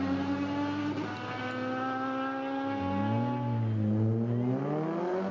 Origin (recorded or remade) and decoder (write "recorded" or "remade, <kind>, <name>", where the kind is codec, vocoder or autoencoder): recorded